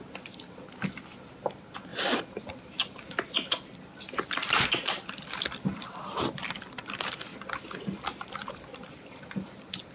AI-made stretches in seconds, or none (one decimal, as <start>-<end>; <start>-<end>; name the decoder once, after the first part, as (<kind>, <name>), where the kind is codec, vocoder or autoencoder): none